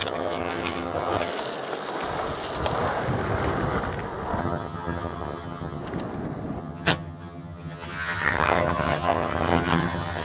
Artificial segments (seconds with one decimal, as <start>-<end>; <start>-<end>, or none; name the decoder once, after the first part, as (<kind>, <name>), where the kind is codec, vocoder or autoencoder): 0.0-1.3 (vocoder, HiFi-GAN); 4.4-5.8; 6.6-10.2